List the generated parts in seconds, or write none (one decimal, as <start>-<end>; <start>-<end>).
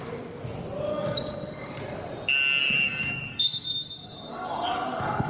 0.9-1.7; 2.6-5.3